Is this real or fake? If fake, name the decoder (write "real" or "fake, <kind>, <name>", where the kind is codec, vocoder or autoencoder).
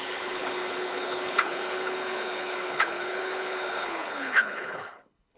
fake, codec, HILCodec